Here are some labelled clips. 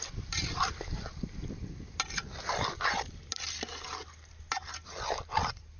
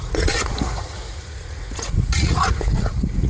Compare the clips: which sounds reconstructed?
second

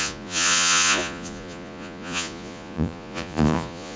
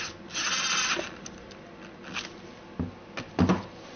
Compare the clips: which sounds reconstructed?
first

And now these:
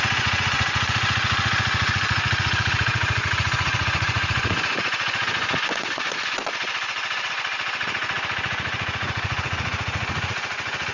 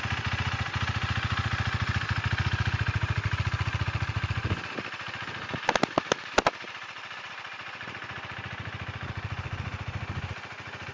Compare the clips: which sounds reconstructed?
first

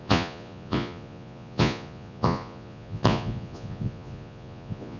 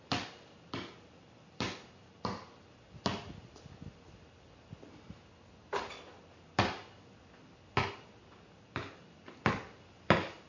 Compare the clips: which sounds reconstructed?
first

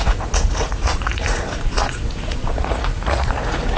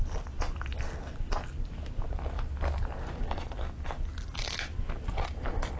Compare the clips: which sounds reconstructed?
first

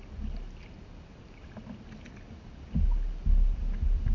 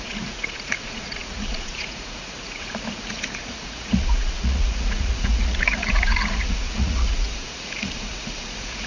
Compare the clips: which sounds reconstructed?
second